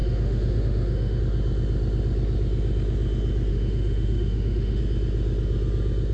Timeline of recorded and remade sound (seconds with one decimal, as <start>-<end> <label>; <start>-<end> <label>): 0.0-1.2 remade; 1.2-3.5 recorded; 3.5-4.8 remade; 4.8-6.1 recorded